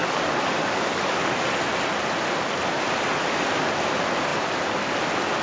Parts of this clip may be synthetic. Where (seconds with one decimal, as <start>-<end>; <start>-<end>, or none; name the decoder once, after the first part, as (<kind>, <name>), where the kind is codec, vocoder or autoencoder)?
0.0-1.4 (codec, DAC)